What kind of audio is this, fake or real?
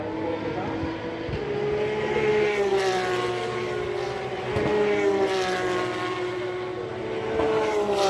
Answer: real